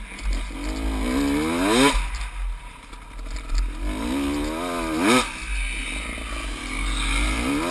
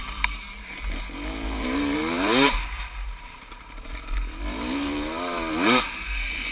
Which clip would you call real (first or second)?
first